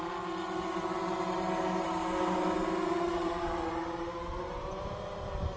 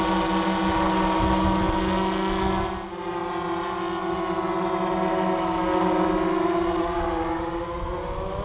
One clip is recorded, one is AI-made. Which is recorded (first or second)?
second